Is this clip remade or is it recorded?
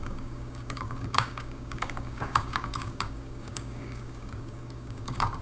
remade